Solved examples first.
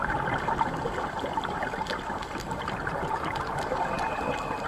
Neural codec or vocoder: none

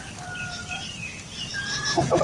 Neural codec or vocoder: vocoder, BigVGAN v2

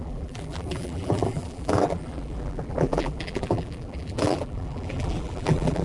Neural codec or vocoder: vocoder, BigVGAN v2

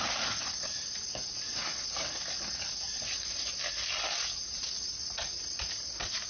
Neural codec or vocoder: none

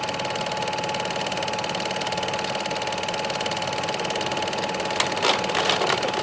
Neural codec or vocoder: none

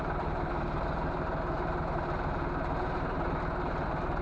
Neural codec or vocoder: vocoder, BigVGAN v2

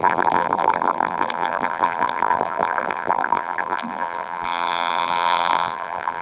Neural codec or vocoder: vocoder, BigVGAN v2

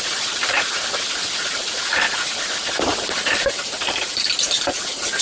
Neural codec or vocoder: vocoder, BigVGAN v2